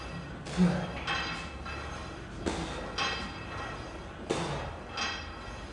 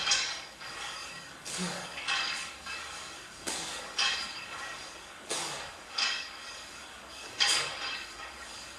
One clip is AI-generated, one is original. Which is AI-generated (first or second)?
second